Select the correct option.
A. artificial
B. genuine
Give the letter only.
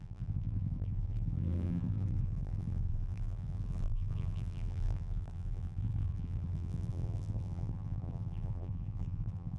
A